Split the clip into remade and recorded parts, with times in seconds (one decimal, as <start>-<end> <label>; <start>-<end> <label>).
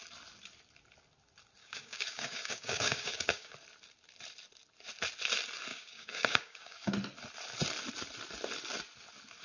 0.0-1.6 recorded; 1.6-3.5 remade; 3.5-5.7 recorded; 5.7-6.9 remade; 6.9-9.4 recorded